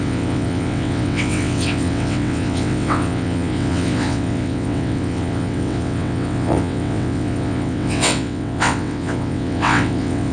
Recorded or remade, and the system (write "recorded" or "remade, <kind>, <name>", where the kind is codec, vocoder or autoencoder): remade, vocoder, WaveNeXt